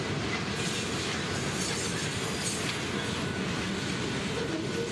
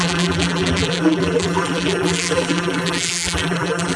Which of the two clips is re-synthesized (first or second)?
second